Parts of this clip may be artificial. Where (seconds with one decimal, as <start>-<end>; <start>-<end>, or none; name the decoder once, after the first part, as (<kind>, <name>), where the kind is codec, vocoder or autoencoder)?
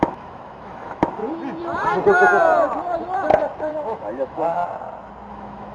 0.0-1.2 (autoencoder, DAC-VAE); 3.7-4.6; 5.3-5.7